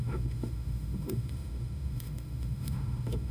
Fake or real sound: fake